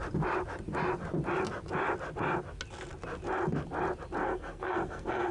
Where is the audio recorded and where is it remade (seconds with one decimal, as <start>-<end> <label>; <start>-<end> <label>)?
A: 0.0-4.2 recorded; 4.2-5.3 remade